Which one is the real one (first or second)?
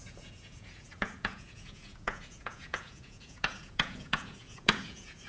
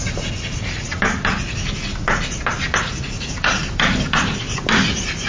second